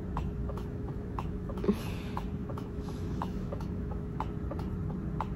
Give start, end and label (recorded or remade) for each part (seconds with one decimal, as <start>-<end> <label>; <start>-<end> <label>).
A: 0.0-0.4 recorded; 0.4-1.8 remade; 1.8-2.4 recorded; 2.4-4.2 remade; 4.2-5.4 recorded